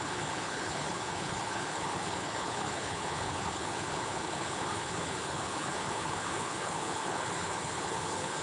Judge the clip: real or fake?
fake